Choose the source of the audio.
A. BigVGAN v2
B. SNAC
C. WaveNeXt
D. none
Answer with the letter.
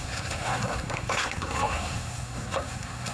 B